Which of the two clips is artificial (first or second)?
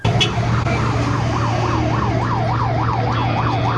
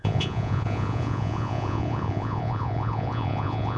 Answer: second